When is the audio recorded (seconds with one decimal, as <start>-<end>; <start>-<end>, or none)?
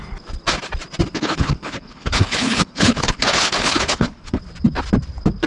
0.0-1.1; 4.4-5.5